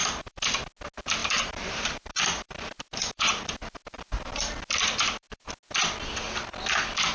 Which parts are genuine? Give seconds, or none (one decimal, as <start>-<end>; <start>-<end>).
0.6-1.2; 5.5-7.1